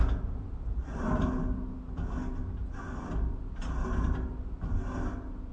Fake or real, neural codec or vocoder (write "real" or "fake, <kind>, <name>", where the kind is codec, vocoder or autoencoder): real